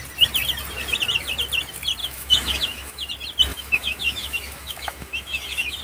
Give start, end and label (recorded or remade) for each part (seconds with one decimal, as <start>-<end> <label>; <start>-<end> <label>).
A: 0.0-2.0 recorded; 2.0-3.1 remade; 3.1-3.5 recorded; 3.5-5.8 remade